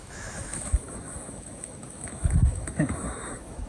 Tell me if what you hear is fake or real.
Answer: fake